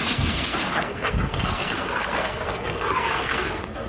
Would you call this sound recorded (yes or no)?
no